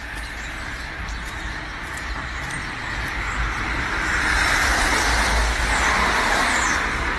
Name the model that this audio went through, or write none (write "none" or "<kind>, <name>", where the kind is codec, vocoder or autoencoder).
none